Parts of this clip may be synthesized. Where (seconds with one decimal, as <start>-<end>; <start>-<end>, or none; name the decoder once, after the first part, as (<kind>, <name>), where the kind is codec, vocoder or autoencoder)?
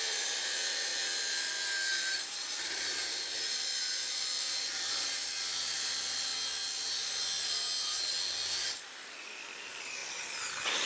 0.0-6.3 (vocoder, BigVGAN v2); 9.2-10.0; 10.5-10.9